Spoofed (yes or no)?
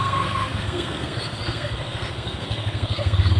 yes